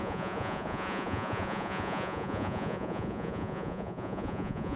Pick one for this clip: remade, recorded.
remade